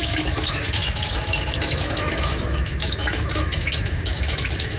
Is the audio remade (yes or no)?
yes